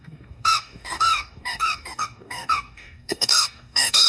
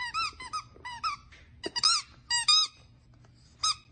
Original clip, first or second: second